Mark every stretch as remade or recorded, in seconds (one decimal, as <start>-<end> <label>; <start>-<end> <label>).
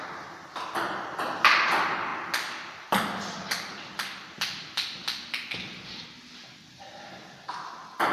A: 0.0-8.1 recorded